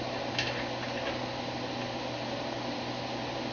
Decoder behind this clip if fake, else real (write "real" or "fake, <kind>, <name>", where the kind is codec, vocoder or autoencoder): real